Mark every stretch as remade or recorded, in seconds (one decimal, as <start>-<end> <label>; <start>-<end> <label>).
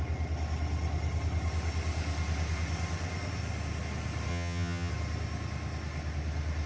0.0-4.3 recorded; 4.3-4.9 remade; 4.9-6.7 recorded